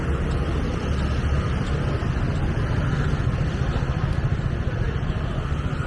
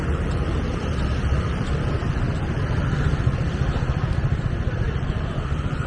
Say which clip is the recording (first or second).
first